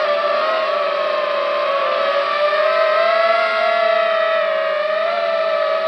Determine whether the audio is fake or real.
fake